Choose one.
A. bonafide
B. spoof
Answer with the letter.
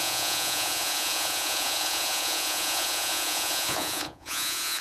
B